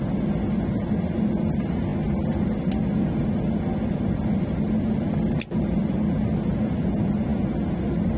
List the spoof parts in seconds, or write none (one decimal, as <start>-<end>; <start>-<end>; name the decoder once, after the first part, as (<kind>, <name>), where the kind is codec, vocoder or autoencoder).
none